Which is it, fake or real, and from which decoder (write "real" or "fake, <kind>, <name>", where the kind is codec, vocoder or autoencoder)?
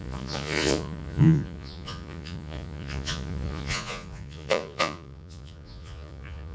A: fake, vocoder, Vocos